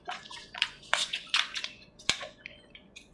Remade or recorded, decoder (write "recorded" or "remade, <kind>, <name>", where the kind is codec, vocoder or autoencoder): remade, vocoder, Vocos